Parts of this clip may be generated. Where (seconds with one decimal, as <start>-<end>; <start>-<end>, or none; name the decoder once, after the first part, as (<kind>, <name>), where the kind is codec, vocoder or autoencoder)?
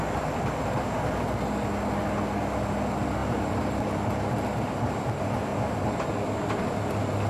3.2-3.8 (vocoder, BigVGAN v2); 5.5-6.1